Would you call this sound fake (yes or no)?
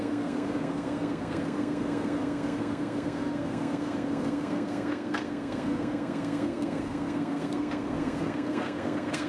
yes